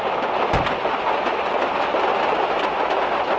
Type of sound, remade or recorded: recorded